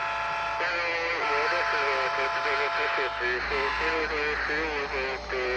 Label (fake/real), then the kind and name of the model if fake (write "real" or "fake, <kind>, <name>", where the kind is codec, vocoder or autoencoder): real